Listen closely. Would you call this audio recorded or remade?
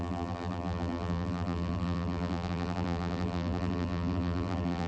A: remade